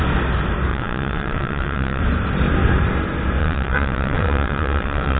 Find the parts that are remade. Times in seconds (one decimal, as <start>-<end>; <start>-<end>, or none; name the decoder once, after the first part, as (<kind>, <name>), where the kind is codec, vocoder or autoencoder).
0.7-2.0 (vocoder, WaveNeXt); 3.4-5.2